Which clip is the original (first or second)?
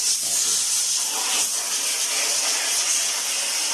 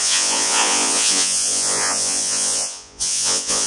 first